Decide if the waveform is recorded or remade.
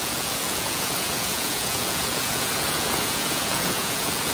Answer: remade